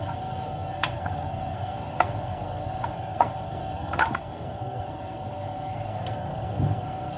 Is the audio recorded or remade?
remade